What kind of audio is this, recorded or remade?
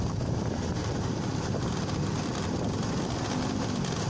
recorded